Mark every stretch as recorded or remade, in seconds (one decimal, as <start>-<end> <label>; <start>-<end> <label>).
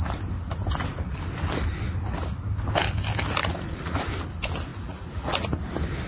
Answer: 0.0-3.4 recorded; 3.4-4.0 remade; 4.0-4.7 recorded; 4.7-5.5 remade; 5.5-6.1 recorded